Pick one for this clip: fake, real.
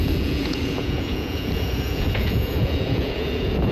fake